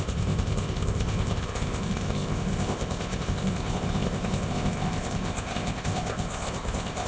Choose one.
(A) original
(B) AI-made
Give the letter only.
B